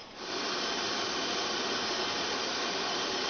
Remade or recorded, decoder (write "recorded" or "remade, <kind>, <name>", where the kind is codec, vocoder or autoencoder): recorded